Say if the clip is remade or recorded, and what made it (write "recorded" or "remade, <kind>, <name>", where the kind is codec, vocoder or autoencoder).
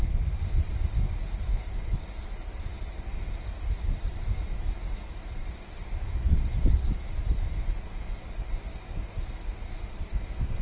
recorded